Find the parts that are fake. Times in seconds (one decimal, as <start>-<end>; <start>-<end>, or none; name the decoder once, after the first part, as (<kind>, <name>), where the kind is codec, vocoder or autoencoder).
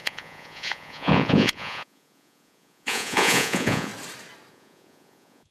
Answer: 0.0-3.9 (vocoder, Vocos); 4.5-5.5